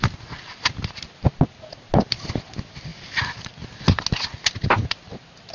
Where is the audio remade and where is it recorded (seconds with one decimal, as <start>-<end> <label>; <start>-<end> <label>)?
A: 0.0-5.5 recorded